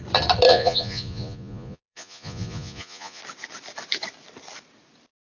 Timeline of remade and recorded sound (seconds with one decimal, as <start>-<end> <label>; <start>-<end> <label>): 0.0-0.5 recorded; 0.5-3.2 remade; 3.2-5.2 recorded